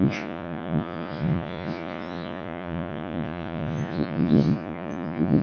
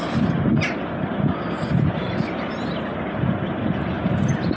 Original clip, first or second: second